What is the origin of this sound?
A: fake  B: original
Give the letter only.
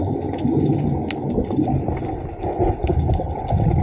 B